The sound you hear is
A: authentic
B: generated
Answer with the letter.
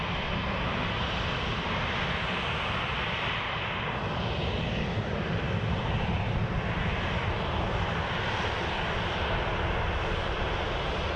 B